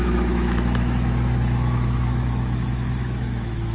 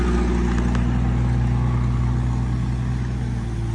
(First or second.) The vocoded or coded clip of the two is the first